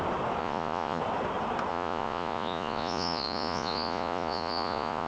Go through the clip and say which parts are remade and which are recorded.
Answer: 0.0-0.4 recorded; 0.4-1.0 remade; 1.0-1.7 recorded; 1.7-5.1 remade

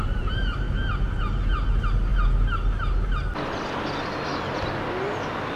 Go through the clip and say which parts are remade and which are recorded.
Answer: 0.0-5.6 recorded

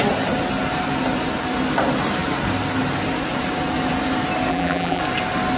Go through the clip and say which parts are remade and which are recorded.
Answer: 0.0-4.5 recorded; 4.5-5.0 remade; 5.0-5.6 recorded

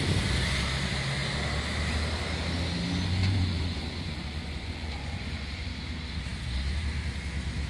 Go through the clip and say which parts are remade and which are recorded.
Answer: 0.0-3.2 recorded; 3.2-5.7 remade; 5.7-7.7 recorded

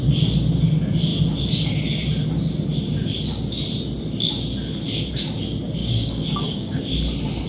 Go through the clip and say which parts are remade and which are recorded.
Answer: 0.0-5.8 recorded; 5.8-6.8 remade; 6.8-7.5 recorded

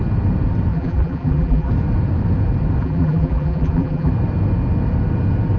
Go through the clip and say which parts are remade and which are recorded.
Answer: 0.0-0.7 recorded; 0.7-1.7 remade; 1.7-2.8 recorded; 2.8-4.1 remade; 4.1-5.6 recorded